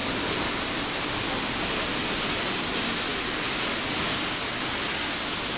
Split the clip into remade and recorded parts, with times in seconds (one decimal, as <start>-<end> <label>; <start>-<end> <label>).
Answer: 0.0-5.6 recorded